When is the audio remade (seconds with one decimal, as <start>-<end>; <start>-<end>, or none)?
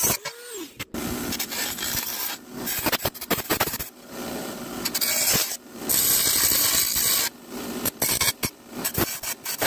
none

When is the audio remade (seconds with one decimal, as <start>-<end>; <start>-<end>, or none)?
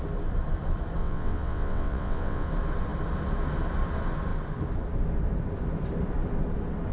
1.0-2.5